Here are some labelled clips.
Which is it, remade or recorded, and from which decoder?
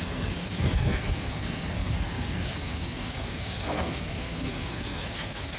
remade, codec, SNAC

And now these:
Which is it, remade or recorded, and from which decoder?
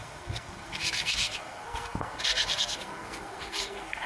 remade, codec, SNAC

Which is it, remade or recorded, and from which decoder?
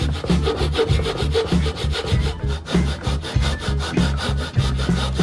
recorded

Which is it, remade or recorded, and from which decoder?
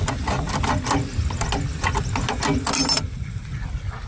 recorded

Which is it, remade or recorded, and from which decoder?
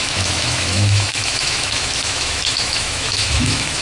remade, autoencoder, DAC-VAE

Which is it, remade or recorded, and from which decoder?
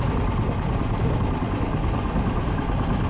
recorded